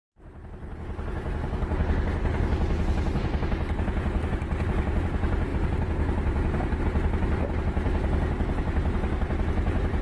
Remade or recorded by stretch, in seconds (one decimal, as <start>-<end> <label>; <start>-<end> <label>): 0.0-10.0 recorded